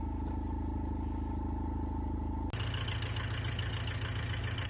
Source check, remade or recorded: recorded